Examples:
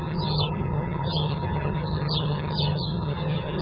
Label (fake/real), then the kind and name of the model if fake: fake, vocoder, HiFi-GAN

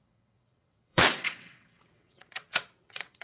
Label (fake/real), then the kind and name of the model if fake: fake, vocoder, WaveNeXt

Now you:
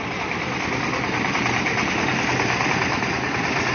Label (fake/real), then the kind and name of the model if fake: real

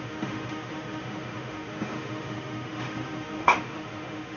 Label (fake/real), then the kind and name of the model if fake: fake, autoencoder, DAC-VAE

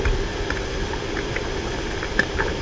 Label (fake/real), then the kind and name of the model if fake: real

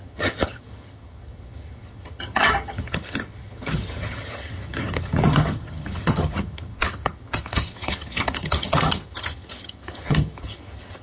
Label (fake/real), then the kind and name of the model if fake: fake, vocoder, HiFi-GAN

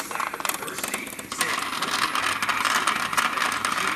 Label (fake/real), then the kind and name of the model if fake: real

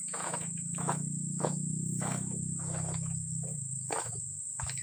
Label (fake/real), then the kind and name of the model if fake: fake, autoencoder, DAC-VAE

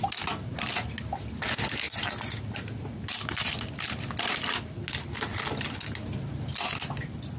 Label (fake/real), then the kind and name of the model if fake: real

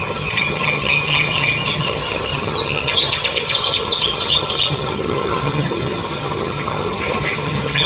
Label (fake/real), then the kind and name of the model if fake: fake, vocoder, HiFi-GAN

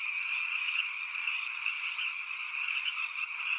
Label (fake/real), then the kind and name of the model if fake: fake, vocoder, HiFi-GAN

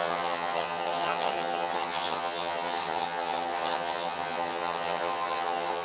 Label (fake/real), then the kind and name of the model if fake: fake, vocoder, HiFi-GAN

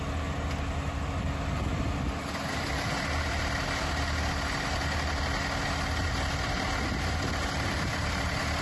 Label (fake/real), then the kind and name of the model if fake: real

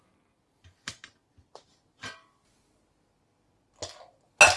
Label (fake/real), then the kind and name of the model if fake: real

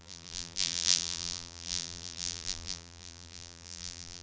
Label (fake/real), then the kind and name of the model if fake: fake, vocoder, BigVGAN v2